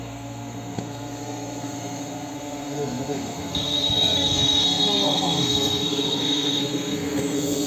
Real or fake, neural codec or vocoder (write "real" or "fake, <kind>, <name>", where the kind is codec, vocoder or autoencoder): fake, codec, SNAC